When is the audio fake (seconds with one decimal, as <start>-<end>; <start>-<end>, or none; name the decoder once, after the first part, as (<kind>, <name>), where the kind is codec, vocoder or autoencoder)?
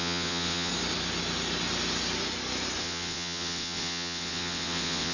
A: 0.0-0.7 (vocoder, WaveNeXt); 2.8-5.1